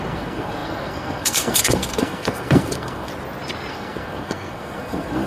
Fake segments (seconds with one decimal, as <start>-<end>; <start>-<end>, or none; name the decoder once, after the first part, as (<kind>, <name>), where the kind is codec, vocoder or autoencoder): 0.0-3.1 (codec, SNAC); 3.7-5.3